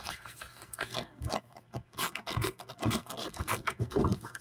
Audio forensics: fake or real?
fake